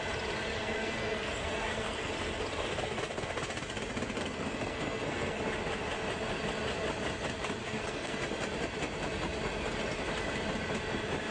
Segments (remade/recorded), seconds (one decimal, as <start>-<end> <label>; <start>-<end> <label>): 0.0-0.5 recorded; 0.5-2.1 remade; 2.1-4.2 recorded; 4.2-5.4 remade; 5.4-7.6 recorded; 7.6-8.2 remade; 8.2-11.3 recorded